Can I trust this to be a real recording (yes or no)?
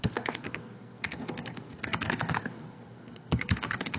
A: no